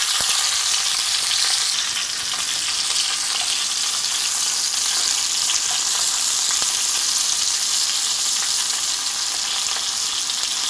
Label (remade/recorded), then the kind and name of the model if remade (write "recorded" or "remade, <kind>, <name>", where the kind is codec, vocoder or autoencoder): recorded